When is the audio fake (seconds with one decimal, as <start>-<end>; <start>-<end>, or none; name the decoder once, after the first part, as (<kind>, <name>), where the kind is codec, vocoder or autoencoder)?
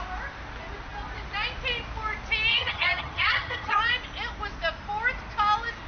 2.5-3.8 (vocoder, HiFi-GAN)